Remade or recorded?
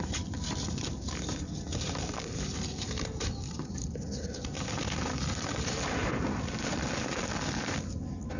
recorded